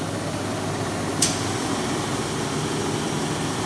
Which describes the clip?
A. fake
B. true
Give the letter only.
B